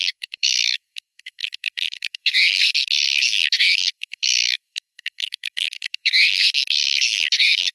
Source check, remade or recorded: remade